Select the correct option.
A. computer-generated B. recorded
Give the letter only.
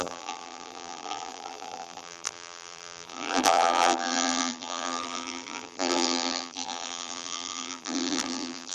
A